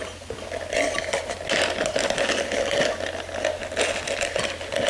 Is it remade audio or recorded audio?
recorded